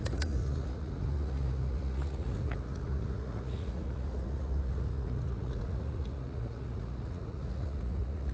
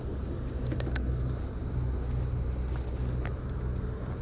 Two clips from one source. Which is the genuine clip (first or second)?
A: second